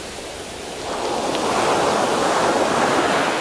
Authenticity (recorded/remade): recorded